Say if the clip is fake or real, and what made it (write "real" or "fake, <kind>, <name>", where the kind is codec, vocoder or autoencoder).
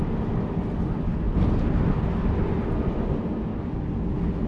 real